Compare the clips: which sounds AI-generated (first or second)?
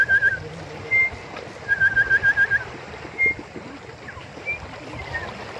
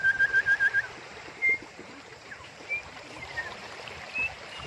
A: second